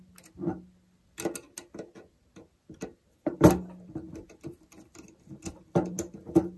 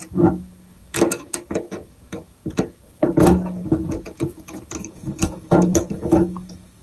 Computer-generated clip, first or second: second